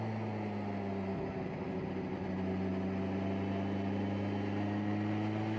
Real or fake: real